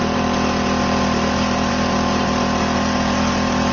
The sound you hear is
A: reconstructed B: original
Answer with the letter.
A